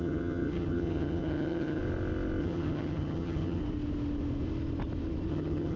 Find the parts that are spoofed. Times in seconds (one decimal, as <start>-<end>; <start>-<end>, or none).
0.0-1.8; 2.4-3.6; 5.3-5.8